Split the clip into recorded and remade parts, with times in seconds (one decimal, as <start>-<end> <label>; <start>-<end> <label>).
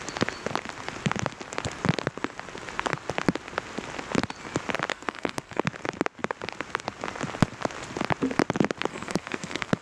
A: 0.0-4.9 recorded; 4.9-5.6 remade; 5.6-8.9 recorded; 8.9-9.8 remade